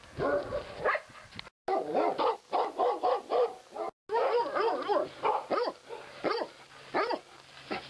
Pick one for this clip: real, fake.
real